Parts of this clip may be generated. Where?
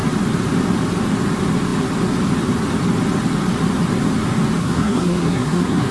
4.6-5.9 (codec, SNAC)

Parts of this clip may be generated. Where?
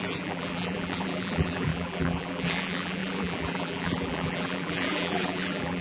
0.0-5.8 (vocoder, BigVGAN v2)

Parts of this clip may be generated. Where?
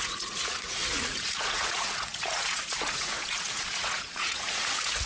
0.0-5.1 (vocoder, Vocos)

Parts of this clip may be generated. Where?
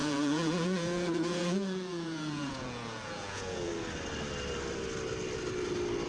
0.0-3.7 (vocoder, Vocos)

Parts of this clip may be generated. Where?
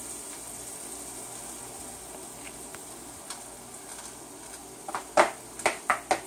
none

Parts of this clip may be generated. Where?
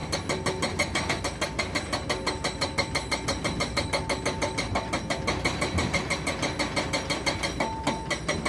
none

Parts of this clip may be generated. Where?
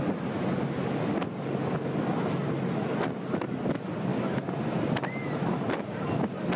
2.4-3.5 (vocoder, BigVGAN v2); 4.1-6.6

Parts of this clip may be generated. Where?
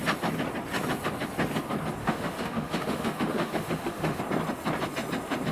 2.0-4.2 (autoencoder, DAC-VAE)